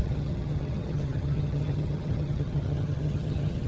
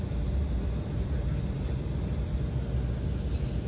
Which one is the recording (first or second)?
second